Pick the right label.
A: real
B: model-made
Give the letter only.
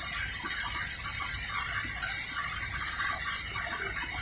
A